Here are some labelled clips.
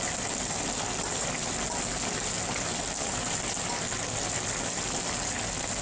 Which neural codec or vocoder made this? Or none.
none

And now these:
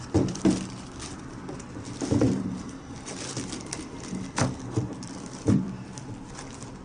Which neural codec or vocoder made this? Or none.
vocoder, BigVGAN v2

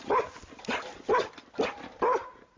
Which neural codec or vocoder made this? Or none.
none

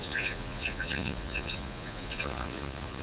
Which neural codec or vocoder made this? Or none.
vocoder, Vocos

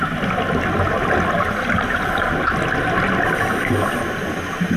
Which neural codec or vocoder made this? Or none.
none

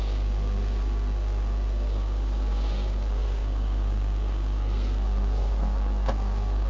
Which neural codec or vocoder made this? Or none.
codec, SNAC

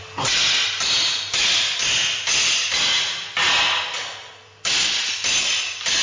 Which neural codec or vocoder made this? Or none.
none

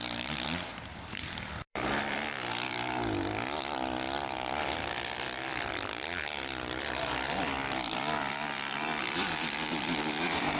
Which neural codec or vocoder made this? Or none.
vocoder, BigVGAN v2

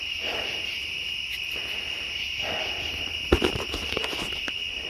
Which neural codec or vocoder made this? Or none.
none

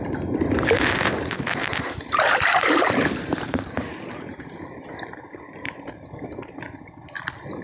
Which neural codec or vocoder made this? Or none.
vocoder, BigVGAN v2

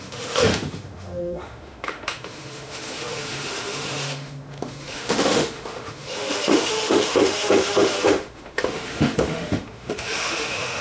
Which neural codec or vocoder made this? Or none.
autoencoder, DAC-VAE